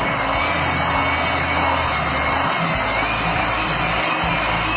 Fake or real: real